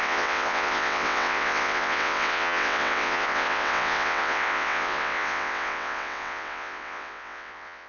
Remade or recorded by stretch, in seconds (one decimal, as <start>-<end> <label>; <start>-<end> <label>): 0.0-7.9 remade